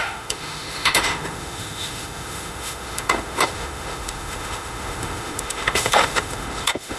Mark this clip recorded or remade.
remade